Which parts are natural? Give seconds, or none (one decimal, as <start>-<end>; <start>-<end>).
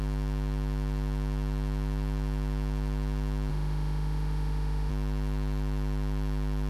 0.0-3.5; 4.9-6.7